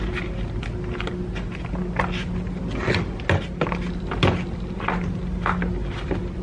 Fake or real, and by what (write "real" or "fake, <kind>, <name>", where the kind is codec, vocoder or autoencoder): real